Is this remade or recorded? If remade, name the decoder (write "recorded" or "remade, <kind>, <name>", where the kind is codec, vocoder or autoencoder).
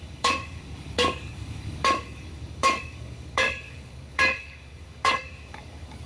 remade, codec, DAC